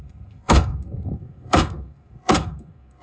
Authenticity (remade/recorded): remade